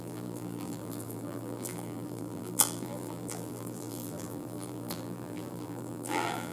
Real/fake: fake